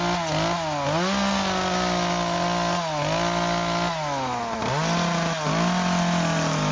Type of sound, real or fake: real